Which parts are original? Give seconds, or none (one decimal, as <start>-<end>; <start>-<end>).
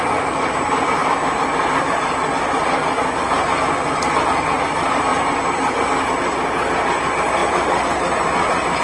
0.0-7.4